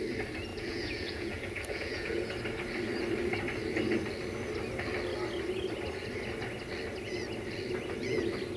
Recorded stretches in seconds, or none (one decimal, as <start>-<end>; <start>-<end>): 0.0-0.5; 2.3-8.6